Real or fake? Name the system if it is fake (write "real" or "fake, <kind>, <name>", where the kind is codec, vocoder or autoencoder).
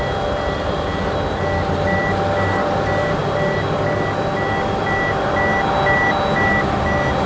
real